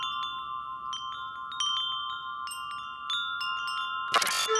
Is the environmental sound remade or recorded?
recorded